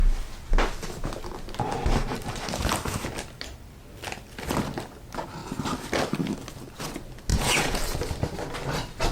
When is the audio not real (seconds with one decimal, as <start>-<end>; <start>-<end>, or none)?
7.3-7.8